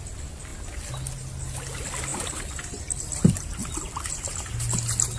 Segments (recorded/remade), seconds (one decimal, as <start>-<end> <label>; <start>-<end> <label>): 0.0-2.1 recorded; 2.1-2.8 remade; 2.8-5.2 recorded